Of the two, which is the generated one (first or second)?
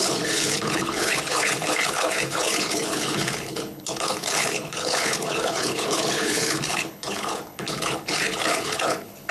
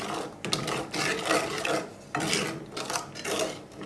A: first